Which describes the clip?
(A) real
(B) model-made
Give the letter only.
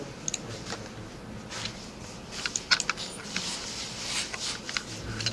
A